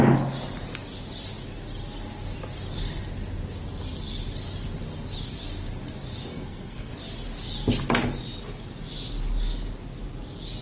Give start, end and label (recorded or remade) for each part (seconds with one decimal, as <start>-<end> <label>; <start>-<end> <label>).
0.0-6.3 recorded; 6.3-6.9 remade; 6.9-10.6 recorded